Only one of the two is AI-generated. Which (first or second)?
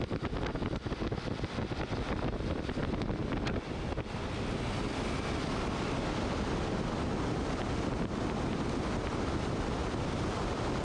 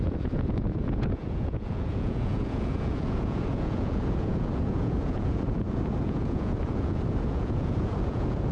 second